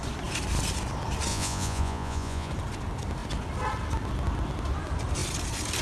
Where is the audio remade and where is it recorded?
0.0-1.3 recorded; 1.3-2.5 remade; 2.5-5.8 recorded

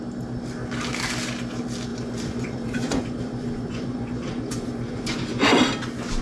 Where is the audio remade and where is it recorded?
0.0-1.9 recorded; 1.9-5.6 remade; 5.6-6.2 recorded

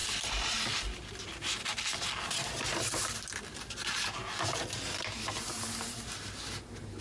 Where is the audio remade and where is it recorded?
0.0-7.0 recorded

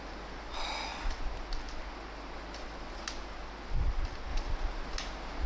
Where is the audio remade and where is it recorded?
0.0-5.5 recorded

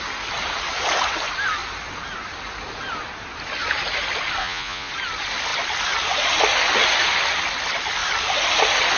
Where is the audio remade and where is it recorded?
0.0-4.4 recorded; 4.4-4.9 remade; 4.9-9.0 recorded